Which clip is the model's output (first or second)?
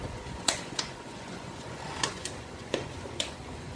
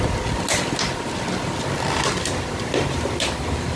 first